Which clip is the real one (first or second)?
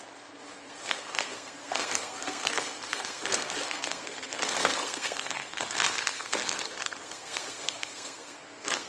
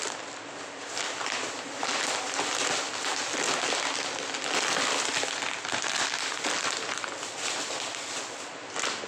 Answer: second